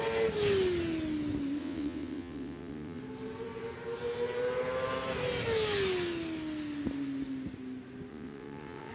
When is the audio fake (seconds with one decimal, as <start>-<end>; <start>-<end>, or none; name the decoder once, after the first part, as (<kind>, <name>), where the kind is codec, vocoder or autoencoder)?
1.6-3.0 (vocoder, WaveNeXt); 8.1-8.9